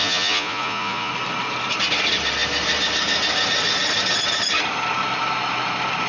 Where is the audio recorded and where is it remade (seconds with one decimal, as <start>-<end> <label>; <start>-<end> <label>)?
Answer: 0.0-1.1 remade; 1.1-6.1 recorded